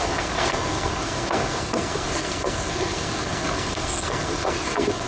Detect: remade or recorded remade